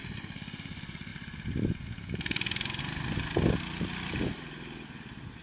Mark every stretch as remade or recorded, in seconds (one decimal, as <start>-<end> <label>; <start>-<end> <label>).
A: 0.0-5.4 recorded